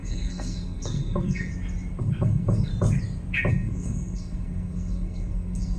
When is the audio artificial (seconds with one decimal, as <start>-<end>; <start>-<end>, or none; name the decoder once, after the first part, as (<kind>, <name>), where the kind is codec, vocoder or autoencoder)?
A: 0.0-1.5 (codec, SNAC); 2.0-2.7; 3.5-5.8